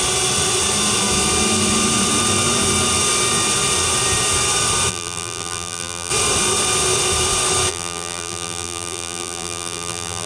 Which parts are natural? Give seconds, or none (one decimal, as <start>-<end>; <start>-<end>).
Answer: 0.0-4.9; 6.1-7.7